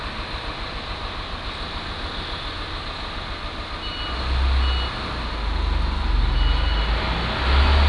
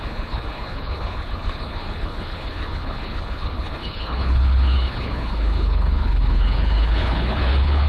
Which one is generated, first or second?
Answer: second